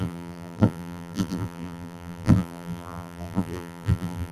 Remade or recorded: remade